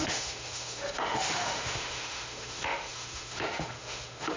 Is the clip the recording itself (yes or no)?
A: no